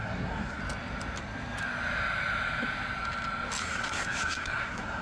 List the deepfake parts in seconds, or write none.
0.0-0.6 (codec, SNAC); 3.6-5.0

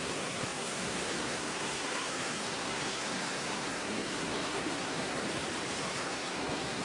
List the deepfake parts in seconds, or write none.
0.0-5.2 (codec, SNAC); 5.8-6.8